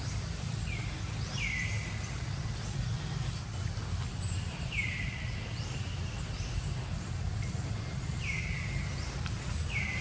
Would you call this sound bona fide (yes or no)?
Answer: no